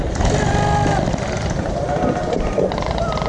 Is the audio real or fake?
real